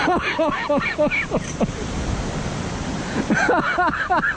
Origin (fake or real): real